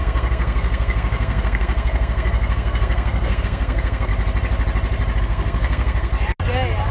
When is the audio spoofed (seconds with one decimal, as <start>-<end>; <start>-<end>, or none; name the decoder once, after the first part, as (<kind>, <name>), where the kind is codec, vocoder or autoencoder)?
0.0-4.1 (codec, SNAC); 5.2-6.1